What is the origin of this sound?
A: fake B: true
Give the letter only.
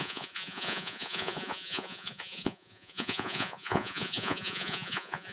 A